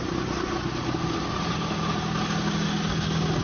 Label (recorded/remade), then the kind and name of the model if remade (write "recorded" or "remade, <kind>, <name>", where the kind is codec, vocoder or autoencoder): recorded